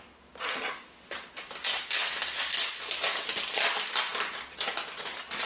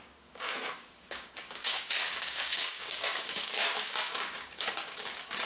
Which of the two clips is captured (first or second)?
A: first